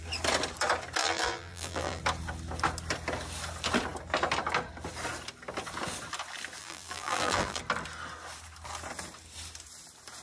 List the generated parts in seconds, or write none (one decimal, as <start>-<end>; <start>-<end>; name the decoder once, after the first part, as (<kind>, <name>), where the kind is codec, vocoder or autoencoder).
1.0-2.0 (vocoder, BigVGAN v2); 6.6-7.6